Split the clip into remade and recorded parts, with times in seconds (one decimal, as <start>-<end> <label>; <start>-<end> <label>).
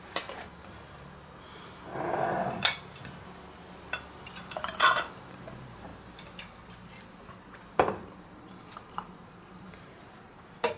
0.0-1.9 remade; 1.9-4.3 recorded; 4.3-5.9 remade; 5.9-7.6 recorded; 7.6-10.8 remade